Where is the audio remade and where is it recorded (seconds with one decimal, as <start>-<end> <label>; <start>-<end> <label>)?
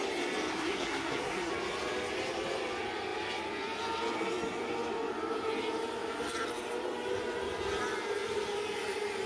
0.0-0.5 recorded; 0.5-1.5 remade; 1.5-9.3 recorded